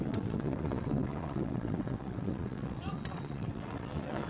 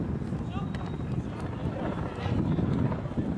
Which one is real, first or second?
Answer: second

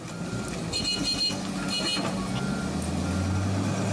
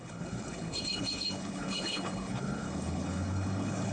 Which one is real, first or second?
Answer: first